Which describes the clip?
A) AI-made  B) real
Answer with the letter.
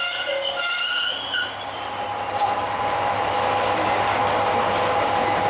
B